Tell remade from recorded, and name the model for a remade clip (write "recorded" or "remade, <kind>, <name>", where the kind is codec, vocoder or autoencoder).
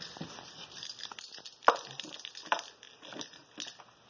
recorded